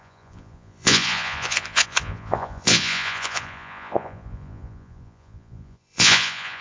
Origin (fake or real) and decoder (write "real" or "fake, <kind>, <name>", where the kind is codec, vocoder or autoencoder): fake, vocoder, Vocos